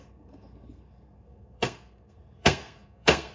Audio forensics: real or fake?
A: fake